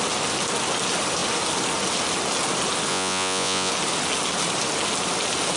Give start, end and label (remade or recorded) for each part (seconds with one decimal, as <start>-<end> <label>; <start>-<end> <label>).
0.0-2.9 recorded; 2.9-3.7 remade; 3.7-5.6 recorded